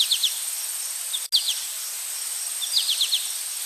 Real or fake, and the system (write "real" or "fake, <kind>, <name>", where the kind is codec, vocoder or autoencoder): real